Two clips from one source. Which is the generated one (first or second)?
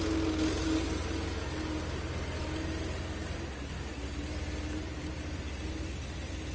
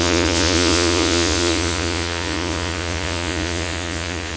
second